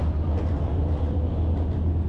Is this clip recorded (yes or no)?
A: yes